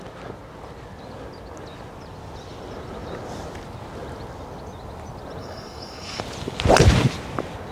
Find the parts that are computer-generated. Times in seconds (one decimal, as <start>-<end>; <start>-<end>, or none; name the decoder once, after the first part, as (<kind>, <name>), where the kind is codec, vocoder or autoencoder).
5.4-6.2 (codec, DAC)